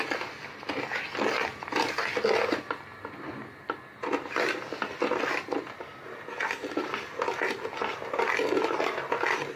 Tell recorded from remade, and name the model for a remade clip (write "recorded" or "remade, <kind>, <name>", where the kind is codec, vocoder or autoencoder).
recorded